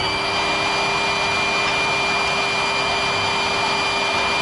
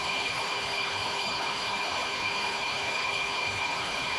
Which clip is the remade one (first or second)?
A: second